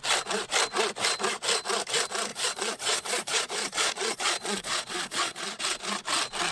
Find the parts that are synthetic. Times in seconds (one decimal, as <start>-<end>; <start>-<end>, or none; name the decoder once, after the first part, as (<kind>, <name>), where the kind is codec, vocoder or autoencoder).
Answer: 2.3-5.6 (vocoder, Vocos)